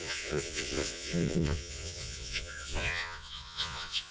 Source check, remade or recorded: remade